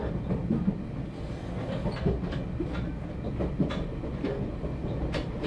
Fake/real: real